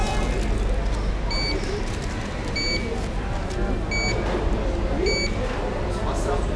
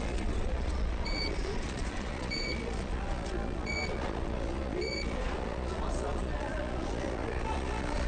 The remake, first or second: second